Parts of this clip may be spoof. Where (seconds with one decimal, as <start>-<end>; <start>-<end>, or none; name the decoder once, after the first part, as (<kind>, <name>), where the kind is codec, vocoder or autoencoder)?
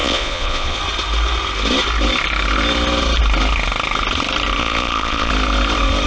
0.0-0.8 (vocoder, Vocos); 4.6-5.3